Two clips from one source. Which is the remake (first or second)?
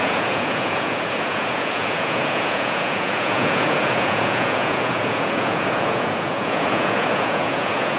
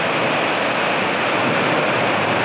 first